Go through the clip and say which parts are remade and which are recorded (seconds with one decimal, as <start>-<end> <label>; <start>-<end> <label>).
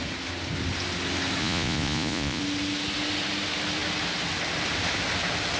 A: 0.0-1.4 recorded; 1.4-2.4 remade; 2.4-5.6 recorded